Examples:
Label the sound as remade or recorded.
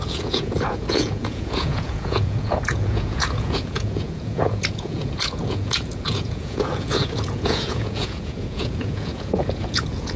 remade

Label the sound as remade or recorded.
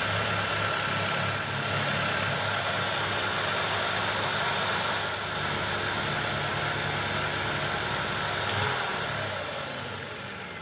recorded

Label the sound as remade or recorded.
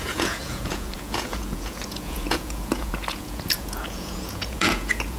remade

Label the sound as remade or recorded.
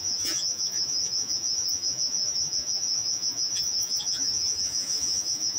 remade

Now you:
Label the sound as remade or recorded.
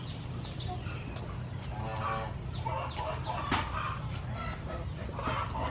recorded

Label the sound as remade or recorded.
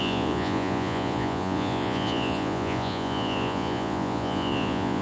remade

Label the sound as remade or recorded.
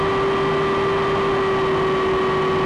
recorded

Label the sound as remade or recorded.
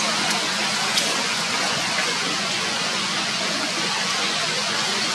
remade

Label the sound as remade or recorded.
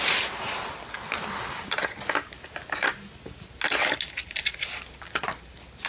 recorded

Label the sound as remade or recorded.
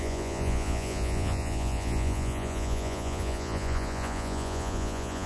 remade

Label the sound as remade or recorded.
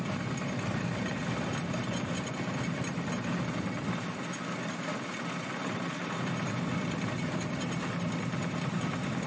recorded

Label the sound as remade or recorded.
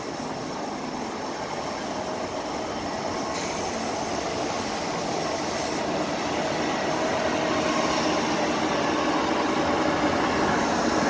recorded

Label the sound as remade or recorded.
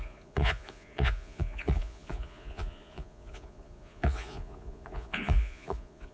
remade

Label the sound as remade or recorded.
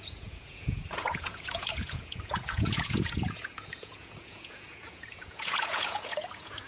remade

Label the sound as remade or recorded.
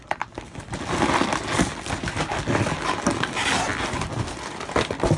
recorded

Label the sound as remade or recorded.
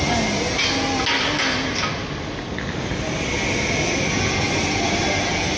recorded